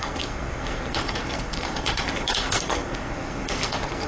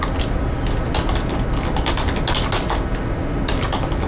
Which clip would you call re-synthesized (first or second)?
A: first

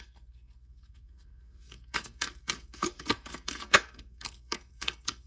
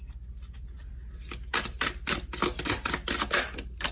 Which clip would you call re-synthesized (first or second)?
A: first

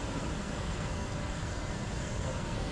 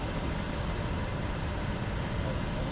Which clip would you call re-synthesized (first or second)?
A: first